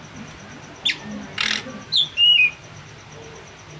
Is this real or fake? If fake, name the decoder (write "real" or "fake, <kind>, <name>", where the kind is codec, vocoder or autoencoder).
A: real